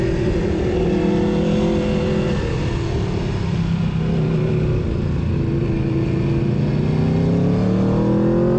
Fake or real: real